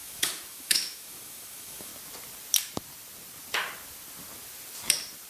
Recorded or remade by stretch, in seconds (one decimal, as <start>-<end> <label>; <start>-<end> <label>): 0.0-1.9 remade; 1.9-5.3 recorded